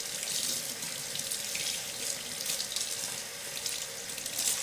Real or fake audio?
real